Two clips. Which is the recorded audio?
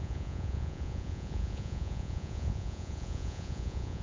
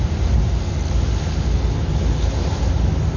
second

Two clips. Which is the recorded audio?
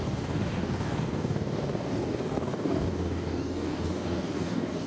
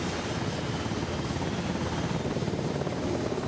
second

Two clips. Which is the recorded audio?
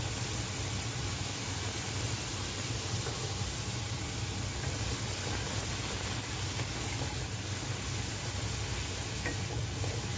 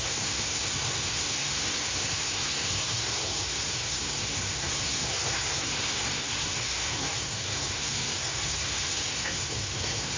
first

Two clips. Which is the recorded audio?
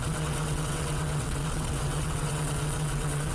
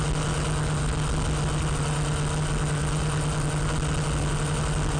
second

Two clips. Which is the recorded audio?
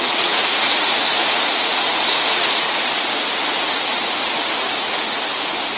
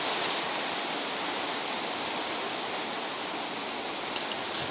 second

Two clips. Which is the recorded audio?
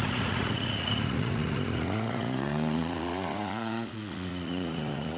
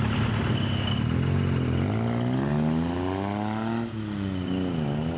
second